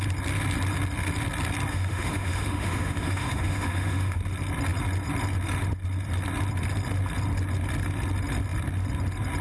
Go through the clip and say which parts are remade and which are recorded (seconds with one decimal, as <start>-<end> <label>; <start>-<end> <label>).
0.0-1.7 recorded; 1.7-4.2 remade; 4.2-9.4 recorded